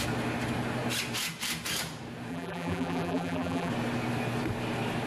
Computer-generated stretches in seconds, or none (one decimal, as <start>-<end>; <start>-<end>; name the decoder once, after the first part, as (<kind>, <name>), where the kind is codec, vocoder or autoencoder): 2.3-3.7 (vocoder, BigVGAN v2)